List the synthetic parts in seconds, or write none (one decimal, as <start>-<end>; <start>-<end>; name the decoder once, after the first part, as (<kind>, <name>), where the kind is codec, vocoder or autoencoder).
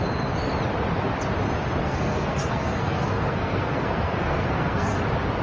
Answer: 1.8-5.0 (codec, SNAC)